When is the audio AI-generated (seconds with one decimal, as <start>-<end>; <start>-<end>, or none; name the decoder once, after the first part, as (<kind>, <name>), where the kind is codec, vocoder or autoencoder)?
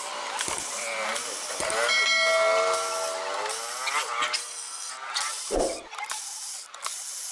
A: 4.4-4.9 (codec, SNAC)